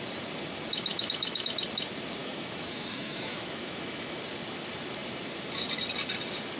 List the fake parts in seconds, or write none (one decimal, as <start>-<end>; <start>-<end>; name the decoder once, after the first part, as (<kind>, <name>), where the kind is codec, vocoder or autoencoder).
0.9-1.5 (autoencoder, DAC-VAE); 2.2-4.2